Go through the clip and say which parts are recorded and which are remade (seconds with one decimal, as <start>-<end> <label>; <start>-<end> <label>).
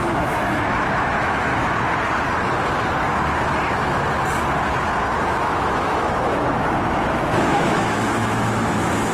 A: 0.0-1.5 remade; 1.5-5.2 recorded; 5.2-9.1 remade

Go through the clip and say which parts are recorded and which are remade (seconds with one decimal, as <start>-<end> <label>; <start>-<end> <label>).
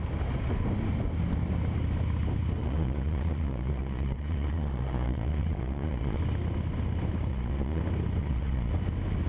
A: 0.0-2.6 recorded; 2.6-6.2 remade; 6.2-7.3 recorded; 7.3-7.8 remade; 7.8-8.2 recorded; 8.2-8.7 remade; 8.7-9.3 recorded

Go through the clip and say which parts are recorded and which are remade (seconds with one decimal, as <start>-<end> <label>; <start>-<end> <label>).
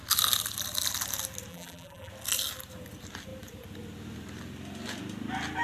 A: 0.0-1.5 recorded; 1.5-2.1 remade; 2.1-5.6 recorded